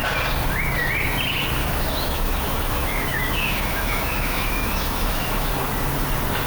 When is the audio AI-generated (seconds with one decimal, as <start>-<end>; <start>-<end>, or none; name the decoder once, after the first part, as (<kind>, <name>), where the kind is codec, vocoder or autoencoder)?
1.6-5.5 (autoencoder, DAC-VAE)